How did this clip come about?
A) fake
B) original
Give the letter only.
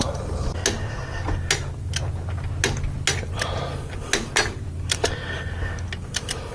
B